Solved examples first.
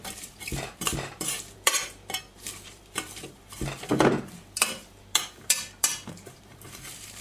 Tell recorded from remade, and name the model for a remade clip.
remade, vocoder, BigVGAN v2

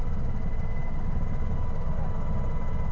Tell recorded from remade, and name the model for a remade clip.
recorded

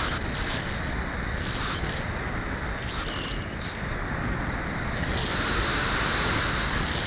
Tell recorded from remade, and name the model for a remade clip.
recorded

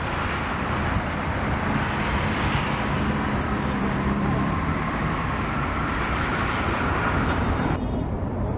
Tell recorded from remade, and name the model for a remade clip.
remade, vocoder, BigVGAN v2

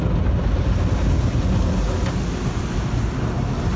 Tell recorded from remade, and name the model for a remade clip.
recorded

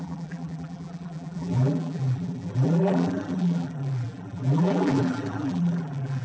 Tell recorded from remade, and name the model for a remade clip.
remade, vocoder, BigVGAN v2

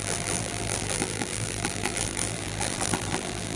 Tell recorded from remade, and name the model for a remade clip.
remade, vocoder, BigVGAN v2